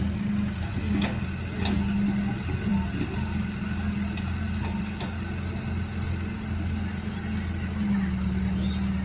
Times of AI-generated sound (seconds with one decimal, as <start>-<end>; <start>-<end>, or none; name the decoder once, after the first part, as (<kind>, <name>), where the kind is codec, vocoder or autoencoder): none

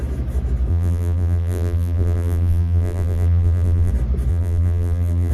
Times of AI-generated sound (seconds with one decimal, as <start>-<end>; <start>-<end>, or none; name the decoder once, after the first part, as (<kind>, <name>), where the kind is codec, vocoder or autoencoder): 0.7-3.9 (vocoder, BigVGAN v2); 4.3-5.3

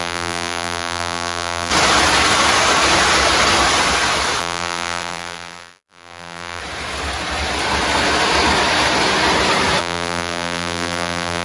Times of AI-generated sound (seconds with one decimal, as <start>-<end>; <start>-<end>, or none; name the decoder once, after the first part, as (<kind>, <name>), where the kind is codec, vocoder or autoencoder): 0.0-1.7 (vocoder, BigVGAN v2); 4.4-6.6; 9.8-11.4